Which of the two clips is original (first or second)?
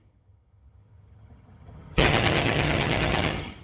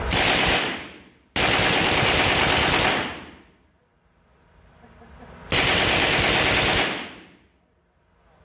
second